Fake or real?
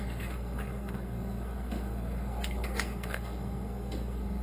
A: fake